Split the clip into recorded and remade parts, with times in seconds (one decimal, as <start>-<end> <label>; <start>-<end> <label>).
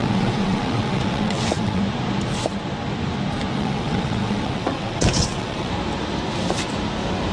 0.0-1.8 remade; 1.8-3.5 recorded; 3.5-5.7 remade; 5.7-7.3 recorded